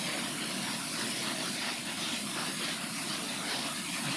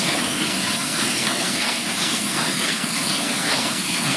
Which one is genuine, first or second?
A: first